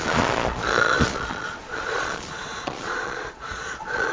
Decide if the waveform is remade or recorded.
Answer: remade